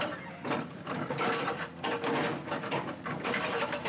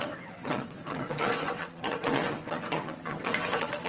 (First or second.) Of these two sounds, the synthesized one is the second